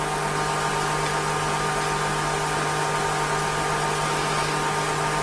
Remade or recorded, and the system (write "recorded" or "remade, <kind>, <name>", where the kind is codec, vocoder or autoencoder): recorded